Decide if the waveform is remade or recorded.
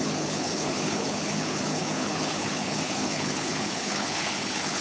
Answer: remade